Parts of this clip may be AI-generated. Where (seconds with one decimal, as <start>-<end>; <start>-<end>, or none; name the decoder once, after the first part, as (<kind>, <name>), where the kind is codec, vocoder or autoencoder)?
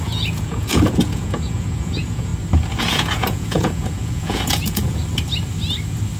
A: 0.0-2.3 (vocoder, Vocos); 2.8-5.0